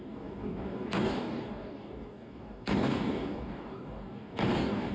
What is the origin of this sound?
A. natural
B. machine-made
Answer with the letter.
B